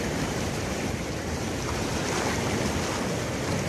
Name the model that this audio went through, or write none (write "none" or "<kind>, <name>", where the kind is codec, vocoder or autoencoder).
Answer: none